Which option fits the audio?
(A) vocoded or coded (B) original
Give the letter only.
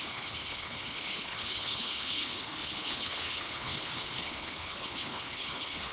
A